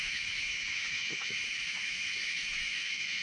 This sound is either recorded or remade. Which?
remade